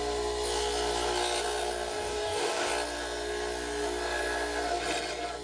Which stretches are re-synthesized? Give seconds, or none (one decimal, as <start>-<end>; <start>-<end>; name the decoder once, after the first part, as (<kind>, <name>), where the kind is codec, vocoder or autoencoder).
1.9-2.7 (codec, DAC)

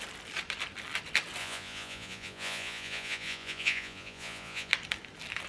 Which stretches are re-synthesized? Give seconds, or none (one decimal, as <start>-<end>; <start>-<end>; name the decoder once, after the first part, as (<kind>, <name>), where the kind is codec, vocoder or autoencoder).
1.4-4.7 (vocoder, Vocos)

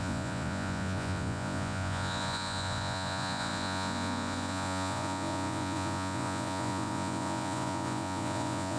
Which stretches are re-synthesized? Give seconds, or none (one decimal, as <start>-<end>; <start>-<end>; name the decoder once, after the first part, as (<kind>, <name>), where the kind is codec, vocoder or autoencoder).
0.0-8.8 (vocoder, Vocos)

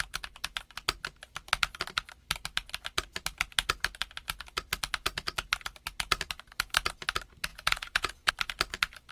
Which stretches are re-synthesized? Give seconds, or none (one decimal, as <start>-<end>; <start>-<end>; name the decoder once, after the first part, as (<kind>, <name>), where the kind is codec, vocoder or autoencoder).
7.5-8.3 (vocoder, Vocos)

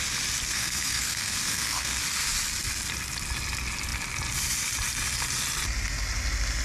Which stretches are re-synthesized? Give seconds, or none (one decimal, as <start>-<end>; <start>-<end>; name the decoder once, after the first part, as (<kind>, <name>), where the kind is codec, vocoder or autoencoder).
0.5-2.0 (codec, SNAC)

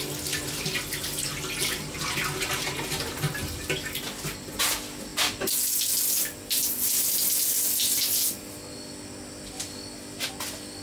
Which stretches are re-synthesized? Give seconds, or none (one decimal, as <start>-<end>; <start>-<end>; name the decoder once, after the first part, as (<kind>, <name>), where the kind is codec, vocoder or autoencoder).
none

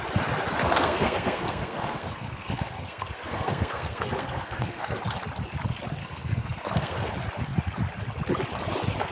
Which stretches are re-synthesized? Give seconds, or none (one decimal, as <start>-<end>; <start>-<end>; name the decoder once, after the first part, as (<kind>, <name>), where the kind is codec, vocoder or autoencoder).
0.6-5.0 (codec, SNAC); 6.0-7.1